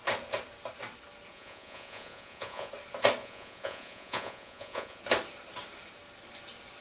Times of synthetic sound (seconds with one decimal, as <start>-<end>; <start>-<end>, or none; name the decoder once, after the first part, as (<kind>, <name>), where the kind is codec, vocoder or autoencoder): 1.3-2.7 (vocoder, Vocos); 3.2-5.0